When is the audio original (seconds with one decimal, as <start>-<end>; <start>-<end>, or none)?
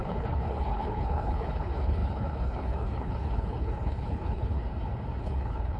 4.6-5.2